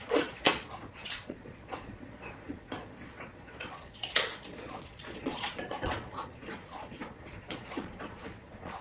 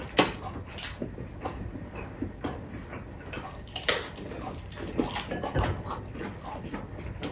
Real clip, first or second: second